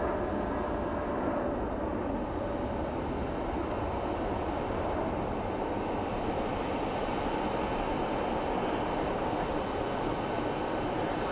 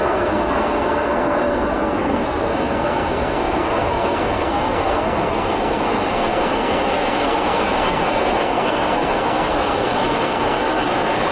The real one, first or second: first